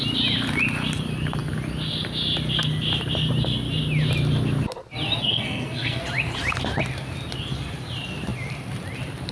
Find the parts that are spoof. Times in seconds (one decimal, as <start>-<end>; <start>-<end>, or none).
5.2-6.0